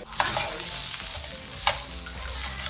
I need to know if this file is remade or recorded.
recorded